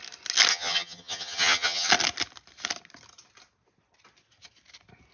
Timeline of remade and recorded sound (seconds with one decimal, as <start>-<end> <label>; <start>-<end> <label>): 0.0-0.5 recorded; 0.5-1.9 remade; 1.9-5.1 recorded